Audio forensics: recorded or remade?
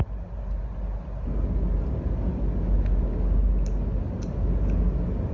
recorded